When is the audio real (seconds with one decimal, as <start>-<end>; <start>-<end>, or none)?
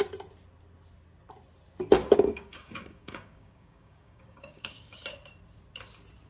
0.0-2.0; 5.1-6.3